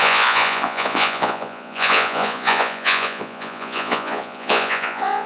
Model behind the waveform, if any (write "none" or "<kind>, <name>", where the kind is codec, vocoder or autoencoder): vocoder, Vocos